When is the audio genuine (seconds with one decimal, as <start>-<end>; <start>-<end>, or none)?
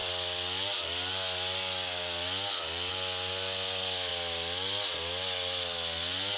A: 0.0-6.4